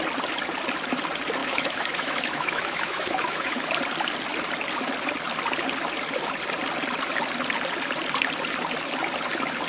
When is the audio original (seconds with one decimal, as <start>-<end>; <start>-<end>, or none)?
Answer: 0.0-1.4; 3.7-9.7